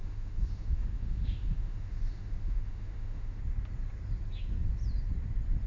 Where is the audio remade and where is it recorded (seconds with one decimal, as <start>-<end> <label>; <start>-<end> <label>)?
0.0-3.4 remade; 3.4-5.7 recorded